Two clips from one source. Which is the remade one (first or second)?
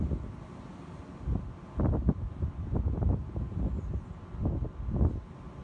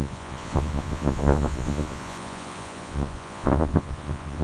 second